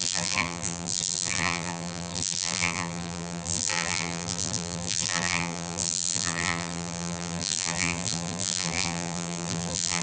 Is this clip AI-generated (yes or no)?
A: yes